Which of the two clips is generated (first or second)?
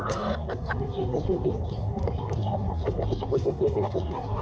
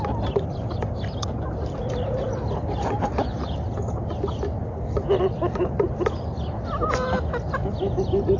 first